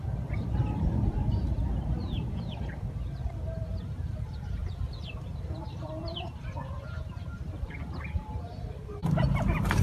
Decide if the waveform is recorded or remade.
remade